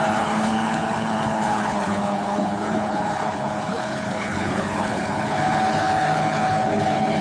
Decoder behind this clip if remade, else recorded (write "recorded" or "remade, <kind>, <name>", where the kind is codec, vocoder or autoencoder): remade, codec, HILCodec